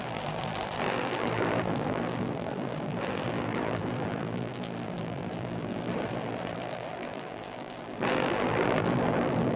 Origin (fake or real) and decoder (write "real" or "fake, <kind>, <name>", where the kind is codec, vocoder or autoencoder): fake, vocoder, BigVGAN v2